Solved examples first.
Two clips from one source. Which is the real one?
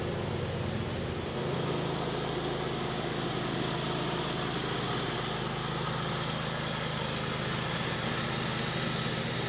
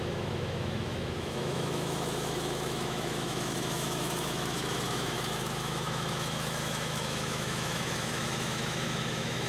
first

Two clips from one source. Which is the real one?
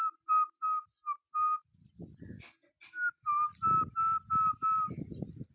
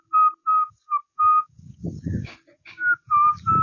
first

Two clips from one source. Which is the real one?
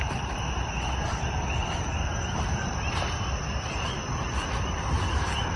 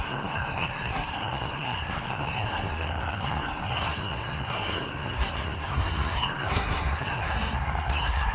first